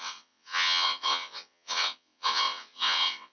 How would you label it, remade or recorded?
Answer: remade